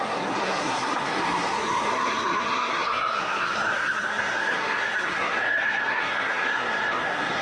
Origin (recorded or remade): remade